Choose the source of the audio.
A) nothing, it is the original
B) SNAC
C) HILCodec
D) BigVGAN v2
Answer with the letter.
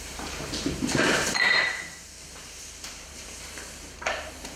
D